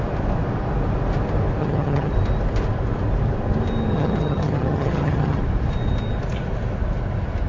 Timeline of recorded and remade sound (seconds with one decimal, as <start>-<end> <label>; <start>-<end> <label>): 0.0-1.6 recorded; 1.6-2.1 remade; 2.1-3.9 recorded; 3.9-5.4 remade; 5.4-7.5 recorded